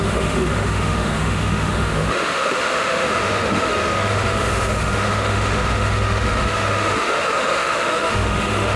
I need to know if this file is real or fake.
fake